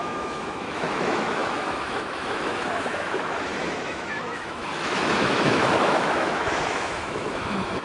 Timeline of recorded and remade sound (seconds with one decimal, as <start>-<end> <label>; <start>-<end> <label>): 0.0-7.8 remade